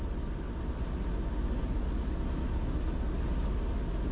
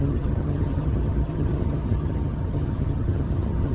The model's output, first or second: second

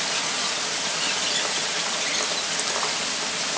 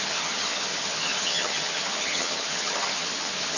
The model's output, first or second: second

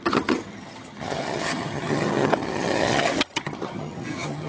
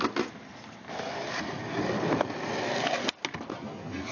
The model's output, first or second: first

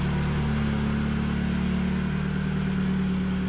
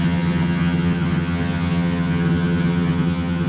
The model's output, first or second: second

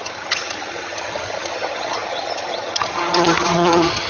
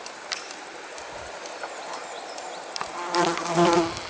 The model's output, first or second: first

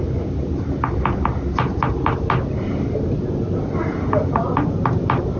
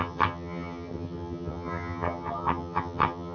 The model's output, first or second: second